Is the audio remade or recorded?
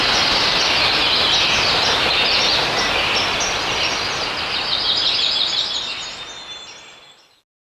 recorded